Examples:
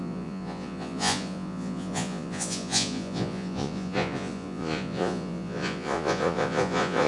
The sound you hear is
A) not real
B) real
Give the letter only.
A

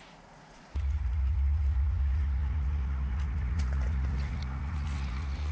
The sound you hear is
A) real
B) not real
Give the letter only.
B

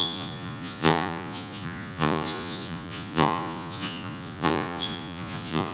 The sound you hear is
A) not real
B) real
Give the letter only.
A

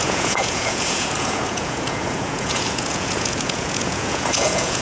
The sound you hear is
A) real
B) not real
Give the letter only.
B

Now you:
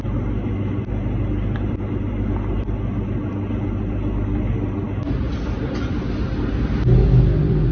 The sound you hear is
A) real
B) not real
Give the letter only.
A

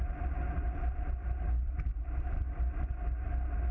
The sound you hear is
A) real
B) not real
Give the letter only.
A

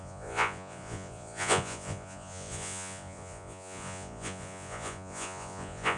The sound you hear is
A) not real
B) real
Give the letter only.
A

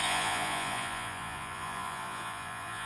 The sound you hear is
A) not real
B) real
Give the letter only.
A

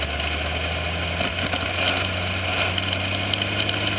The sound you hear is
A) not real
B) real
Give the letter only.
B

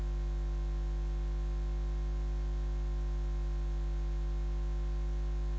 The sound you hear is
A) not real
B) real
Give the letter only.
B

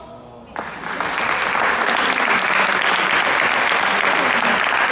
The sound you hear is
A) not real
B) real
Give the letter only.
B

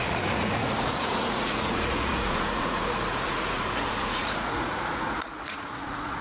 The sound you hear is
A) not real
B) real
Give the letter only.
A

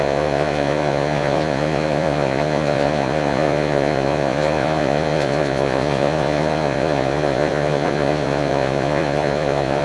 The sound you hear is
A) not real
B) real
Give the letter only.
A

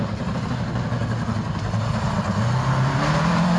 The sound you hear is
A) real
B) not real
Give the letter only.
A